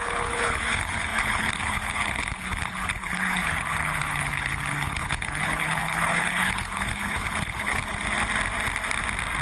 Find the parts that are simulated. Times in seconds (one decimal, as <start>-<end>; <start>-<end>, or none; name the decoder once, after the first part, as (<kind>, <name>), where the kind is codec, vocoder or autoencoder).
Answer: 0.0-7.8 (codec, HILCodec)